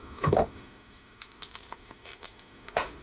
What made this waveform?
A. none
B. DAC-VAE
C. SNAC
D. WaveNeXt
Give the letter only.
B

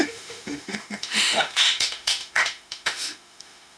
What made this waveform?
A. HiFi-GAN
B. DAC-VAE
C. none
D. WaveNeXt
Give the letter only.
B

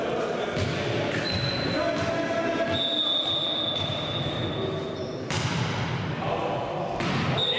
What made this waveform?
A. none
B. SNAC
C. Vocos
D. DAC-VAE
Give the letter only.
A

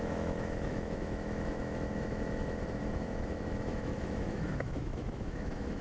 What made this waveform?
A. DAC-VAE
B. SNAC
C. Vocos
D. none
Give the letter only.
A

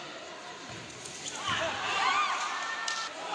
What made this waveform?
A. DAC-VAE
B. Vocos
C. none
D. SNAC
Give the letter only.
C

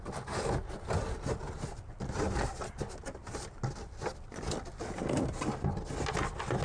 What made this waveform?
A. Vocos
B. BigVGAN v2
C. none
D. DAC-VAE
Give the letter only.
C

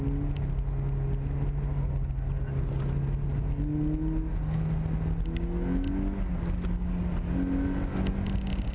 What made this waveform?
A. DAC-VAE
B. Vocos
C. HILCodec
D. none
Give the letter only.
D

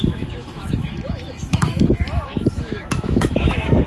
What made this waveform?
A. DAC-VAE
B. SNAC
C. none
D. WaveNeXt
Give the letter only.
A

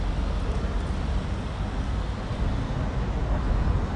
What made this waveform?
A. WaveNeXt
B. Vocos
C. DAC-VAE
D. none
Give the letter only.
D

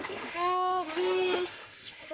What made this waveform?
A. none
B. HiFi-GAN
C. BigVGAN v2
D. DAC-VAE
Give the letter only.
D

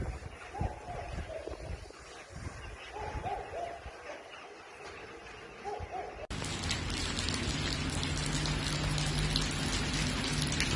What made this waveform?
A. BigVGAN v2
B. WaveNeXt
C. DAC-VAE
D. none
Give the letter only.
D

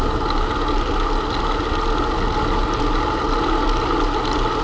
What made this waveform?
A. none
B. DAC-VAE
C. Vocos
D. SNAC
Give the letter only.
A